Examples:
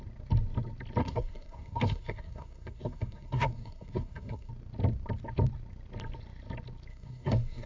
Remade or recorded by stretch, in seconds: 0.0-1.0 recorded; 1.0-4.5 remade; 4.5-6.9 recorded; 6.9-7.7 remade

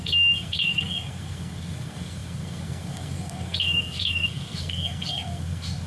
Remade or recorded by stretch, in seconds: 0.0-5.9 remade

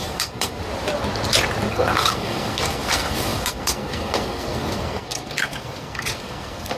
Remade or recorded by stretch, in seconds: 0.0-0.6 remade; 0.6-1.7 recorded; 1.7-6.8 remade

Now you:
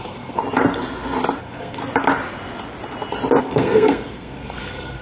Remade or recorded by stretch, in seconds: 0.0-0.4 remade; 0.4-1.4 recorded; 1.4-1.8 remade; 1.8-3.4 recorded; 3.4-5.0 remade

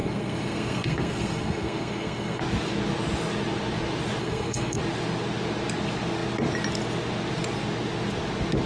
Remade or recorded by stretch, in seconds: 0.0-2.4 remade; 2.4-4.2 recorded; 4.2-4.8 remade; 4.8-8.7 recorded